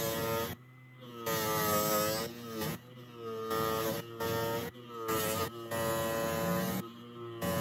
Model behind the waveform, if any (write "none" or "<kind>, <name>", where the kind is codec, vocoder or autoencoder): none